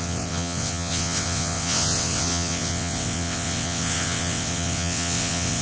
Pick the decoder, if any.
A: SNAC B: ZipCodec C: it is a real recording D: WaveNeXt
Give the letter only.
D